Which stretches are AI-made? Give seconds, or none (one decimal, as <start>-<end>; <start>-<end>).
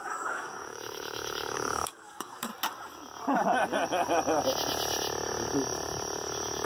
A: 0.0-2.5